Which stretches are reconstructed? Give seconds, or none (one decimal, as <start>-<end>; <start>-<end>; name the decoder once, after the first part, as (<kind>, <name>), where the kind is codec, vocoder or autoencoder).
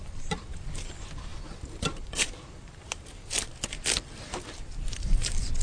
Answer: none